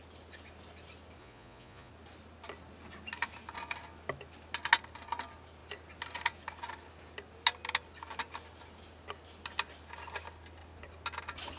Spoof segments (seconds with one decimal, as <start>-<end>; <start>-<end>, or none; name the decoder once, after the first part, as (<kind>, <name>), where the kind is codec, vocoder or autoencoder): 1.2-1.9 (vocoder, Vocos)